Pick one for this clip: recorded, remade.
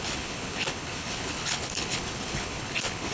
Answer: remade